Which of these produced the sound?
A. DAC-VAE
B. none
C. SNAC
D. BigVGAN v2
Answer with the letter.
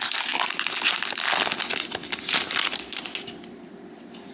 B